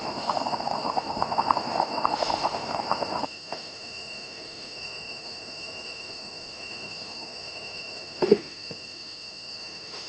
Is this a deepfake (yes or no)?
yes